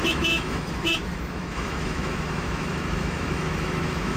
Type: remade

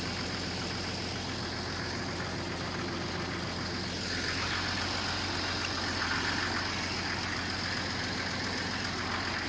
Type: recorded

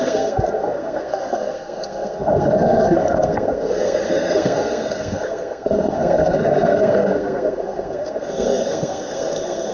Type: remade